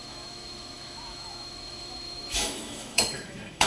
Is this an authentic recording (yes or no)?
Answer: no